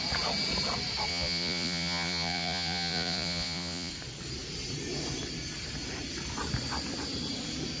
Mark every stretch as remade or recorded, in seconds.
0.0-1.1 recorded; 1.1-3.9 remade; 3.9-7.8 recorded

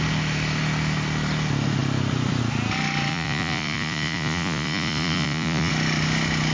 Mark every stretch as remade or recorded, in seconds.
0.0-3.1 recorded; 3.1-5.7 remade; 5.7-6.5 recorded

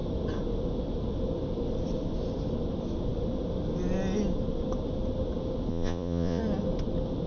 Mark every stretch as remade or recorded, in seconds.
0.0-5.7 recorded; 5.7-6.4 remade; 6.4-7.3 recorded

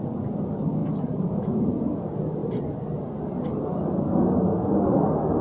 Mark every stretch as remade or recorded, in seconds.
0.0-0.8 recorded; 0.8-2.0 remade; 2.0-5.4 recorded

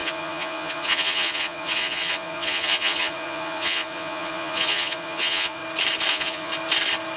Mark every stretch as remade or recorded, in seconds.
0.0-5.6 remade; 5.6-6.1 recorded; 6.1-6.5 remade; 6.5-7.2 recorded

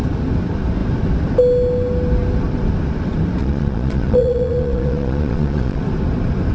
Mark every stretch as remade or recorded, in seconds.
0.0-3.4 recorded; 3.4-5.8 remade; 5.8-6.5 recorded

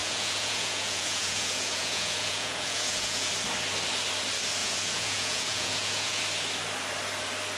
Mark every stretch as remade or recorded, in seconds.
0.0-3.3 remade; 3.3-4.6 recorded; 4.6-6.2 remade; 6.2-7.6 recorded